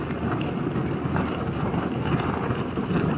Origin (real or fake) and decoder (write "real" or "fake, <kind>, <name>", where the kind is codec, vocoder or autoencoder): real